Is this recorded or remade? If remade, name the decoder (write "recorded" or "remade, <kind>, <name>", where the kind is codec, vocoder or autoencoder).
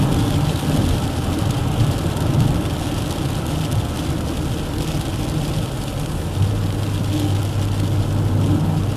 recorded